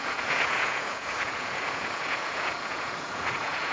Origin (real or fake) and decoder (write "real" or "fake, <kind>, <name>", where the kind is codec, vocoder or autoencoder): fake, vocoder, Vocos